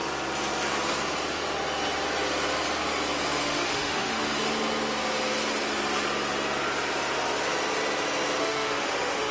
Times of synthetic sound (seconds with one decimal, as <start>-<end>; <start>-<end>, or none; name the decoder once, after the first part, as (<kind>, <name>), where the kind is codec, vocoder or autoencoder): 3.4-4.3 (autoencoder, DAC-VAE); 8.4-9.3

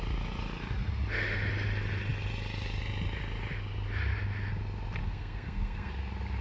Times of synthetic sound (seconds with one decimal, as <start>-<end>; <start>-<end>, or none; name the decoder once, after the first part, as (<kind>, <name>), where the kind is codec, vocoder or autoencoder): 5.0-5.9 (codec, SNAC)

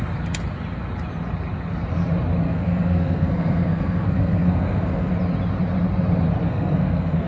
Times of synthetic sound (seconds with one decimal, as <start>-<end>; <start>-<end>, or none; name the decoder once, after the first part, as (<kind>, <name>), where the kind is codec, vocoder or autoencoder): 2.4-5.1 (codec, SNAC); 6.5-7.3

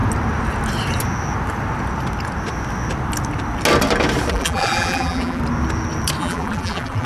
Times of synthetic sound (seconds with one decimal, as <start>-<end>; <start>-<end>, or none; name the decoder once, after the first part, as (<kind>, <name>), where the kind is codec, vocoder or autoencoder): 4.3-5.4 (vocoder, BigVGAN v2); 6.2-7.1